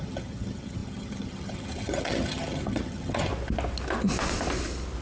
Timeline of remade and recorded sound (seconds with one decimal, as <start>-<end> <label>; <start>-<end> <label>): 0.0-3.3 remade; 3.3-5.0 recorded